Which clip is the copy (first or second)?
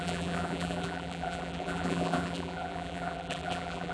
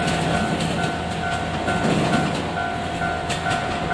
first